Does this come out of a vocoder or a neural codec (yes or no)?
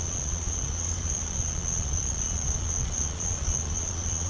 yes